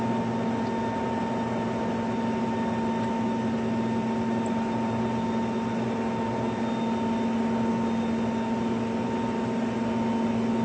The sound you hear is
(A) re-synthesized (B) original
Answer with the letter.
B